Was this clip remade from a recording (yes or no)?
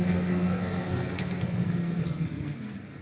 yes